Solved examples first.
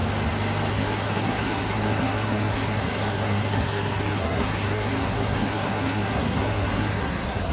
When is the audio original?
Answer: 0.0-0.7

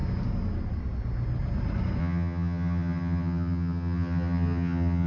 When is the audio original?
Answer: 0.0-2.0